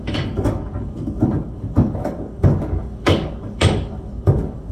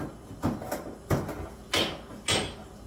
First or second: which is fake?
first